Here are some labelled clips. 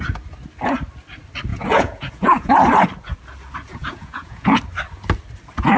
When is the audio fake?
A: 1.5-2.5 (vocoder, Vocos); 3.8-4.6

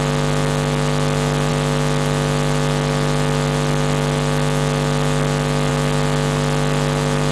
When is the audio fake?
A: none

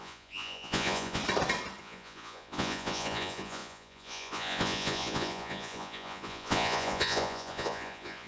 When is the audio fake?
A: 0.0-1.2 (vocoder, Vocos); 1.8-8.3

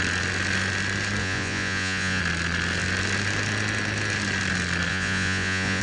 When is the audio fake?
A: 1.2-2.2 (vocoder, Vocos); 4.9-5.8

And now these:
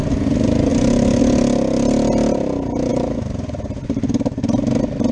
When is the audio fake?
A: none